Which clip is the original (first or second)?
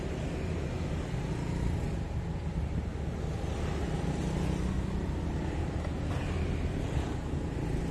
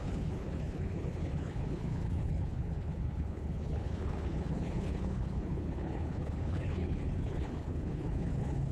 first